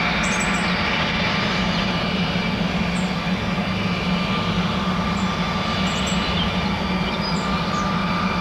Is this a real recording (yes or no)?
yes